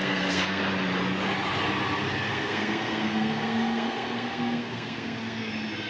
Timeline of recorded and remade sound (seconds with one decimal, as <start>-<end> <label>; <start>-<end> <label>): 0.0-0.6 remade; 0.6-2.3 recorded; 2.3-5.5 remade; 5.5-5.9 recorded